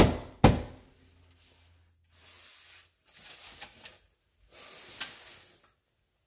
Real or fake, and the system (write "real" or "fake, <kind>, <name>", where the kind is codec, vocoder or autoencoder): real